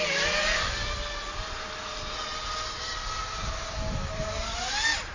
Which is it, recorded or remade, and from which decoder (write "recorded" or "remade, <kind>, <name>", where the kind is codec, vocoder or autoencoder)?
recorded